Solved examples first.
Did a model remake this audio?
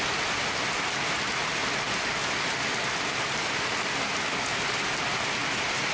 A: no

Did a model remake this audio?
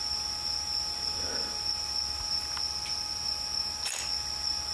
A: no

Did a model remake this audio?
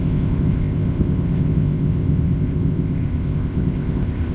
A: yes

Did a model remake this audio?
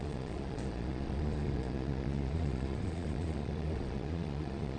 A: yes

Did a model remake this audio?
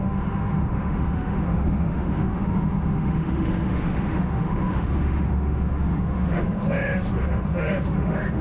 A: yes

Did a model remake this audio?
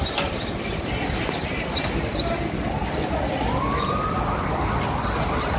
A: no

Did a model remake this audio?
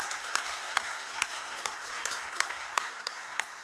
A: yes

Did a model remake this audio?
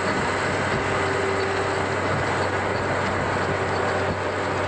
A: no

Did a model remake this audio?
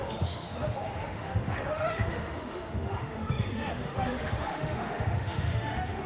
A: yes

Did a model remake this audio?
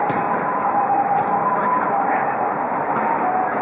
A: yes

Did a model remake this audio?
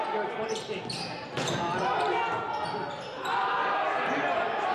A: no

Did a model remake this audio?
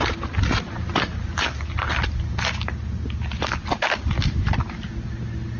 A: no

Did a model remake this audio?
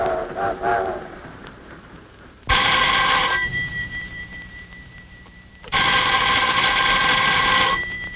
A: yes